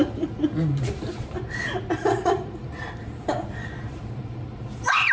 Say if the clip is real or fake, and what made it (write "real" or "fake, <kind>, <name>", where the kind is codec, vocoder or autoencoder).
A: fake, vocoder, BigVGAN v2